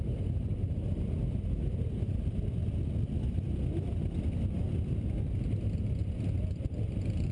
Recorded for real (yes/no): no